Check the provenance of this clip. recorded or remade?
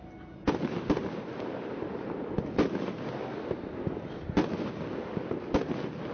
recorded